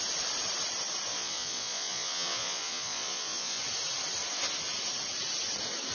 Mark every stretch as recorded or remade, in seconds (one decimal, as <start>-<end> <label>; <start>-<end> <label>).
0.0-1.1 recorded; 1.1-3.6 remade; 3.6-5.9 recorded